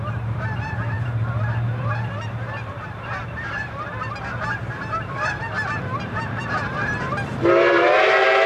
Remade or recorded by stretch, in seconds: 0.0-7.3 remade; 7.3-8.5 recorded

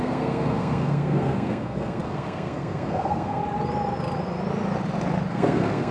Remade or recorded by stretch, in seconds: 0.0-3.4 remade; 3.4-5.3 recorded; 5.3-5.9 remade